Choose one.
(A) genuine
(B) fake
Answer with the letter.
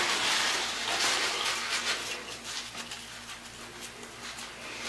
A